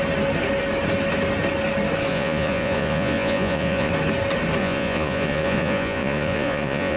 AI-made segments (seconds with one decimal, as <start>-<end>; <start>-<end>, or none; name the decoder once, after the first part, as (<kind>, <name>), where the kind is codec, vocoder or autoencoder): 2.1-3.9 (vocoder, Vocos); 4.6-7.0